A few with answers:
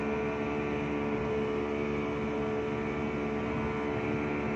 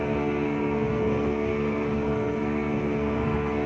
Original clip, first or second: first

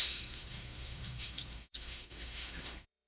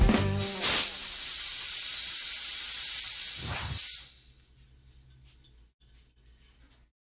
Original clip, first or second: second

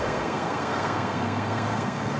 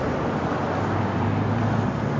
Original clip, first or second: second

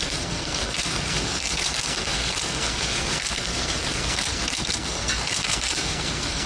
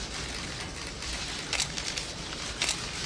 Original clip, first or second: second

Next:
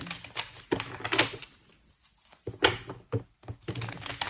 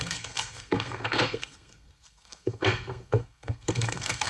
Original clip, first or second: first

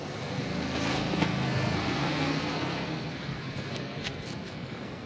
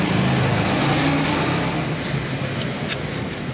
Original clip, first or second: second